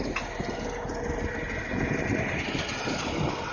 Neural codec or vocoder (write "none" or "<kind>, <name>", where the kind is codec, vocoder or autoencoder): none